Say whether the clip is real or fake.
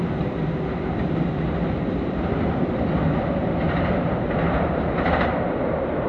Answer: real